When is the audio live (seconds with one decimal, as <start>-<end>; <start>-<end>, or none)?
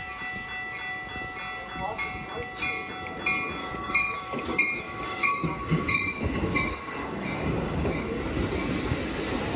0.0-3.6; 8.2-9.6